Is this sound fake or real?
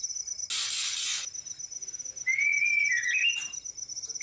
real